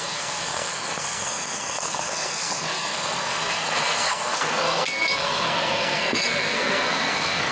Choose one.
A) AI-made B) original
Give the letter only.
A